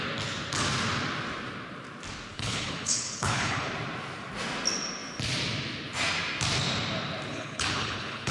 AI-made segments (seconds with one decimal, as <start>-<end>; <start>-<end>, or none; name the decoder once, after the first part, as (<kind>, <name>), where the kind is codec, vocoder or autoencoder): 2.3-3.7 (codec, HILCodec); 7.3-8.3